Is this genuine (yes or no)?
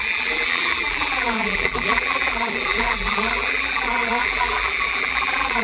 no